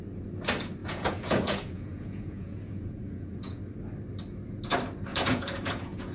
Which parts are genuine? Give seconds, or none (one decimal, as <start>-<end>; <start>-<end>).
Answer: 0.0-0.8; 3.6-5.1